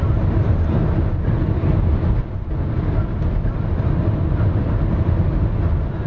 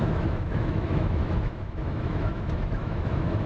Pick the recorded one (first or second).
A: first